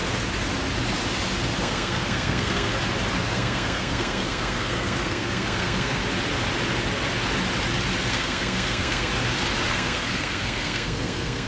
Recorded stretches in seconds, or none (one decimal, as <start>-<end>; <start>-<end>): 0.0-1.6; 2.7-3.2; 6.0-8.1; 9.1-9.7

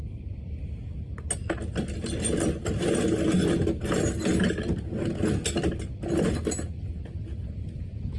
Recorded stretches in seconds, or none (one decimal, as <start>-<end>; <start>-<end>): 0.0-8.2

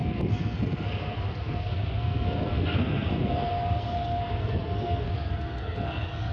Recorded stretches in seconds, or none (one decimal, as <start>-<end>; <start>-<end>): none

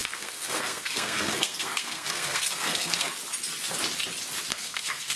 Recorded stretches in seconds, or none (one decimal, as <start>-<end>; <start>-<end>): 3.1-4.5